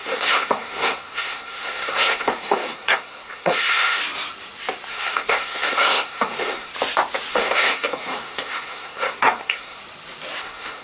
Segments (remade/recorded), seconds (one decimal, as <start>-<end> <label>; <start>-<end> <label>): 0.0-4.0 remade; 4.0-4.9 recorded; 4.9-6.7 remade; 6.7-7.3 recorded; 7.3-9.8 remade; 9.8-10.4 recorded; 10.4-10.8 remade